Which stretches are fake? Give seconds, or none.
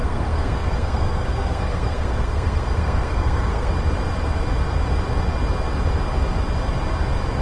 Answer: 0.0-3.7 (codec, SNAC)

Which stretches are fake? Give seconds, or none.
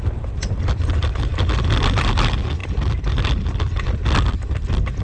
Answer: none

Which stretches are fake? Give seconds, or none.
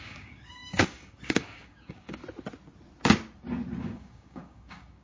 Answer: 0.0-2.2 (codec, DAC); 3.8-5.0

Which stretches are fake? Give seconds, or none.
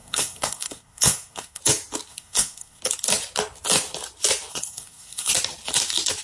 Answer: 0.0-1.6 (codec, SNAC); 2.1-2.8; 4.5-5.3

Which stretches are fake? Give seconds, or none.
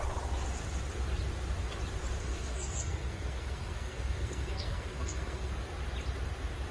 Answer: 2.2-5.5 (codec, SNAC)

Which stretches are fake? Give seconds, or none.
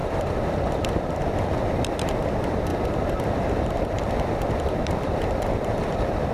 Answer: 1.0-2.7 (vocoder, BigVGAN v2); 4.5-6.3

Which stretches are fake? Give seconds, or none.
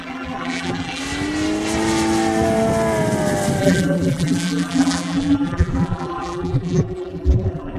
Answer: 0.0-1.0 (vocoder, BigVGAN v2); 3.6-7.8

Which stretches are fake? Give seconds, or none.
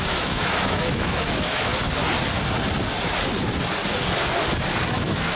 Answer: 0.0-1.7 (autoencoder, DAC-VAE); 4.9-5.4